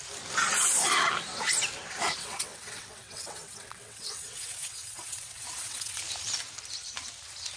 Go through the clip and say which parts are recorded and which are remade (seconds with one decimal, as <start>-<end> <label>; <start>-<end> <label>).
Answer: 0.0-2.2 recorded; 2.2-6.0 remade; 6.0-7.6 recorded